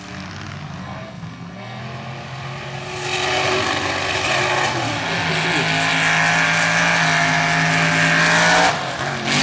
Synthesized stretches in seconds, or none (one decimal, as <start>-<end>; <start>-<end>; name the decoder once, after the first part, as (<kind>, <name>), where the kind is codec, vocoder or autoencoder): 0.8-1.8 (codec, SNAC)